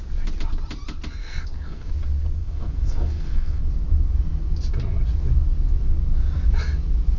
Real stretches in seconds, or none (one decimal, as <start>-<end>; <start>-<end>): 0.0-1.2; 1.9-2.4; 3.6-7.2